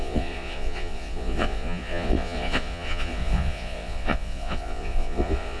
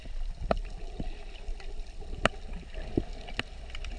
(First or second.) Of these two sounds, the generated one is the first